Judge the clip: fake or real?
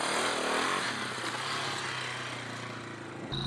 real